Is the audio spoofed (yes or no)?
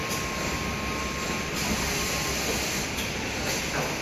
no